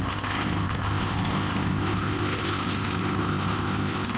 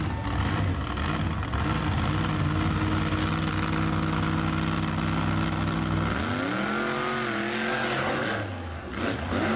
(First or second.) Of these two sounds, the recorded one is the second